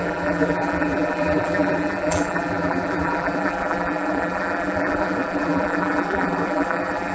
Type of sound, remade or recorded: remade